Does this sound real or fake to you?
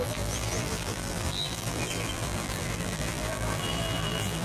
fake